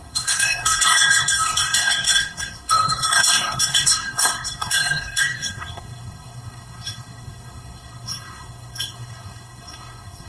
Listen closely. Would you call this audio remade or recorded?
remade